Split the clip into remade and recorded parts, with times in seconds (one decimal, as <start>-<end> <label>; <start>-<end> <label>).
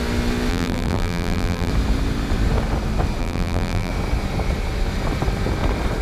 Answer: 0.0-0.5 recorded; 0.5-1.7 remade; 1.7-3.2 recorded; 3.2-3.9 remade; 3.9-6.0 recorded